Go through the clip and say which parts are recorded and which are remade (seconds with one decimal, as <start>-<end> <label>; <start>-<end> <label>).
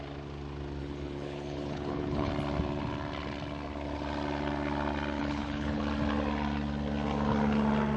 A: 0.0-0.8 recorded; 0.8-2.3 remade; 2.3-5.2 recorded; 5.2-5.8 remade; 5.8-8.0 recorded